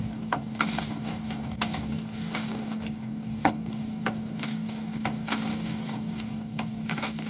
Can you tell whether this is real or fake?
fake